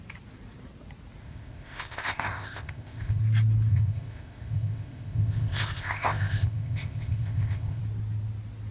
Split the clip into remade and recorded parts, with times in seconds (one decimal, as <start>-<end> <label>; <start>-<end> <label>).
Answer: 0.0-1.2 recorded; 1.2-3.2 remade; 3.2-3.7 recorded; 3.7-7.8 remade; 7.8-8.7 recorded